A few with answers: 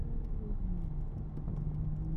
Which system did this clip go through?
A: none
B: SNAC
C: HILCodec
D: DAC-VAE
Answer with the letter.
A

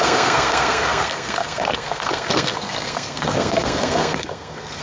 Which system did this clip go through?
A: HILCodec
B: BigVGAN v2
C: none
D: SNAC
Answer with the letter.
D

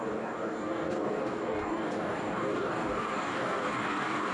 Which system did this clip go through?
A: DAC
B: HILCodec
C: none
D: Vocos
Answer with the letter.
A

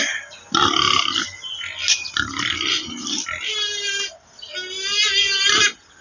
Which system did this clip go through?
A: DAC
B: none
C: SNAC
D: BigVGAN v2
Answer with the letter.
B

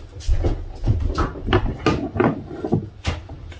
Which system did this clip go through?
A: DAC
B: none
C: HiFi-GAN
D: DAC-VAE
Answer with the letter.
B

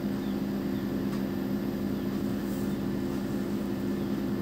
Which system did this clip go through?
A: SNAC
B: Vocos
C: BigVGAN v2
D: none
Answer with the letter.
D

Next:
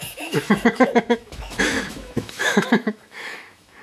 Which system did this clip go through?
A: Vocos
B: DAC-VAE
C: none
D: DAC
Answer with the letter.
B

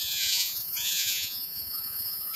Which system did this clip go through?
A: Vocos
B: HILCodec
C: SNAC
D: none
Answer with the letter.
A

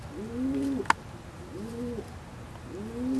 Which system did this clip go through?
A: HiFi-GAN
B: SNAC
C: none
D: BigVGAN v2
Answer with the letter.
C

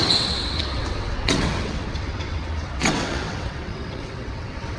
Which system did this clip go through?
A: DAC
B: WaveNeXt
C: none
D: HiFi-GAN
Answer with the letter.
B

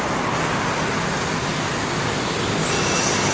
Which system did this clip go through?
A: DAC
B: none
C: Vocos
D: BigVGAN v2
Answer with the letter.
B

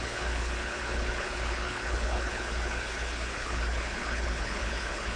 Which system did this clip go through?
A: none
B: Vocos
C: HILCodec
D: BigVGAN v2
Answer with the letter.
C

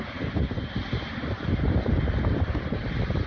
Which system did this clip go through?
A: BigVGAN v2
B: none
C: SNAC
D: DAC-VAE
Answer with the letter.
B